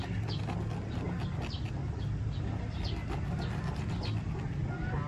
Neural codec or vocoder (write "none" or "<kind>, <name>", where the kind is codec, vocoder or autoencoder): none